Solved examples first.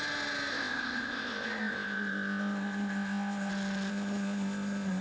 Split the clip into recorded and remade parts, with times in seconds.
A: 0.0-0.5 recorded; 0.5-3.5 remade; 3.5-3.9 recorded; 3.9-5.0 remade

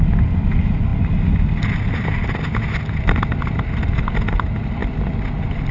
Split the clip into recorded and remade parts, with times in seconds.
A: 0.0-5.7 recorded

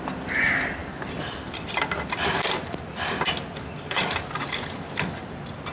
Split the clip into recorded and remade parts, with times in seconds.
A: 0.0-5.7 recorded

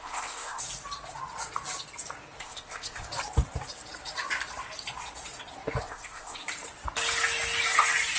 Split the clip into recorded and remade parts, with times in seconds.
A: 0.0-0.6 remade; 0.6-2.4 recorded; 2.4-3.1 remade; 3.1-5.8 recorded; 5.8-6.4 remade; 6.4-8.2 recorded

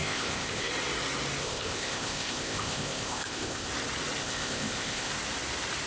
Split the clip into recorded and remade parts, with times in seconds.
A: 0.0-0.7 remade; 0.7-1.4 recorded; 1.4-3.7 remade; 3.7-4.2 recorded; 4.2-5.1 remade; 5.1-5.9 recorded

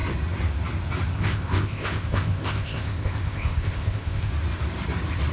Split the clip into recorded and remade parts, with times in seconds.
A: 0.0-1.1 recorded; 1.1-4.3 remade; 4.3-5.3 recorded

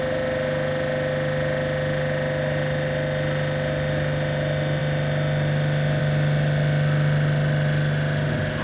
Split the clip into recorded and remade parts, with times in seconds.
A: 0.0-8.6 recorded

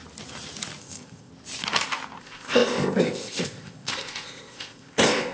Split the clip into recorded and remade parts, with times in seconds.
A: 0.0-0.8 recorded; 0.8-1.3 remade; 1.3-2.2 recorded; 2.2-5.3 remade